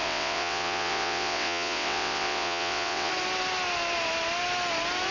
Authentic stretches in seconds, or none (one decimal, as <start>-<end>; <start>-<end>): 3.1-5.1